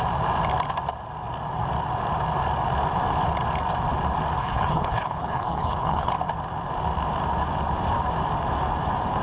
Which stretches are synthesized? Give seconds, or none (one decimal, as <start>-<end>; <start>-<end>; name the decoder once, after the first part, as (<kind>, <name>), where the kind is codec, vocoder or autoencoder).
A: 4.4-6.1 (codec, HILCodec)